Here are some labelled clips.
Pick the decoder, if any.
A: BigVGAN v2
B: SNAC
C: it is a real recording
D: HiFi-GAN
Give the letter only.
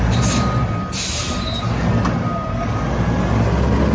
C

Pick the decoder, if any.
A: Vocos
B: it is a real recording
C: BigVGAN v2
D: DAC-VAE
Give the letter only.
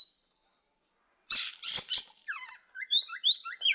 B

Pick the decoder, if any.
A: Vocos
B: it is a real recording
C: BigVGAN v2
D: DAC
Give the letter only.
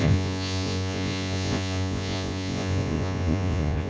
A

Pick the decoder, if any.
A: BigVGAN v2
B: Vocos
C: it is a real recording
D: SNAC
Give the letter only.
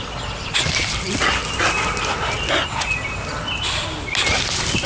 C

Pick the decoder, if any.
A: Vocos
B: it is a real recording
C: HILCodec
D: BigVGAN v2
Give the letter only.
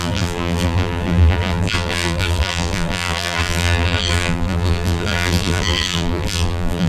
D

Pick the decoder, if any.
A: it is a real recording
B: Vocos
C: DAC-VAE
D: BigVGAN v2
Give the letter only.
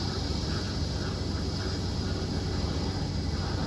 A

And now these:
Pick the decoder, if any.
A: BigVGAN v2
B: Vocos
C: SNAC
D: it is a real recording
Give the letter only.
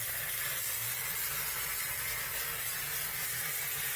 A